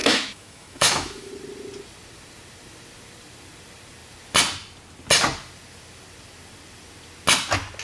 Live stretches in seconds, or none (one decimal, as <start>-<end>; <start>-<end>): 1.3-7.8